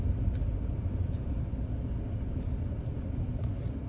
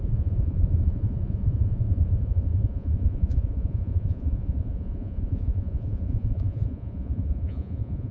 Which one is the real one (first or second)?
first